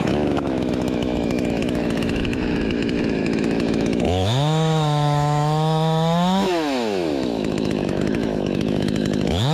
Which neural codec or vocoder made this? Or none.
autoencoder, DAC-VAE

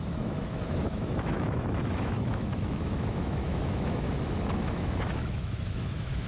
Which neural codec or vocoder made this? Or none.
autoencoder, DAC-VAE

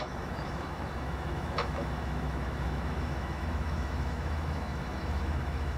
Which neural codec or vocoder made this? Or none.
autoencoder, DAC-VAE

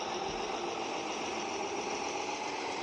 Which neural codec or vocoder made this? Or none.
none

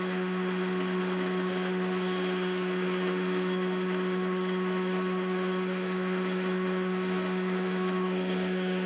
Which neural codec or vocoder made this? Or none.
autoencoder, DAC-VAE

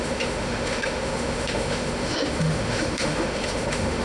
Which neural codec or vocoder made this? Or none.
autoencoder, DAC-VAE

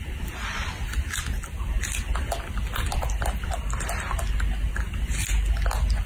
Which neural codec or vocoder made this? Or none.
none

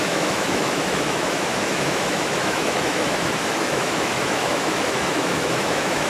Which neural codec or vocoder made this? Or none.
autoencoder, DAC-VAE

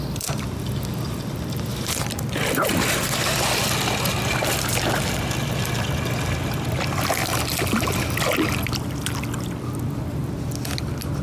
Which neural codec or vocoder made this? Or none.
none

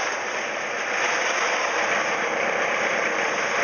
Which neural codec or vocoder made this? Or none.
none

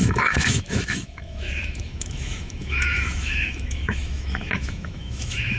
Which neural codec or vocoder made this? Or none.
autoencoder, DAC-VAE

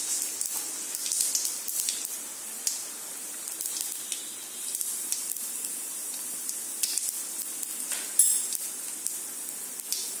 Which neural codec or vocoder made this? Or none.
none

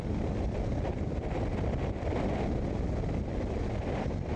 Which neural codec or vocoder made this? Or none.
none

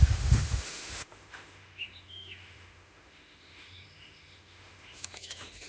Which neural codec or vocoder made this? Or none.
autoencoder, DAC-VAE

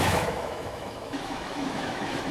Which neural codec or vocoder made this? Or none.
autoencoder, DAC-VAE